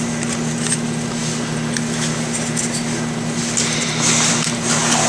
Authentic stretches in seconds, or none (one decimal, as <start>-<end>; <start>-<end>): 0.0-5.1